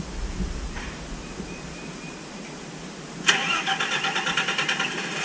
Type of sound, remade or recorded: recorded